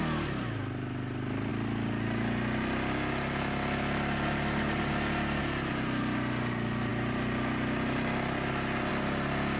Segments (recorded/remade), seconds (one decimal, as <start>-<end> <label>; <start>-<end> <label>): 0.0-9.6 recorded